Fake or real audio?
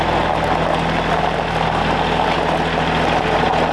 real